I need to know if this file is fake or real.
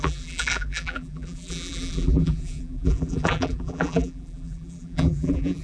fake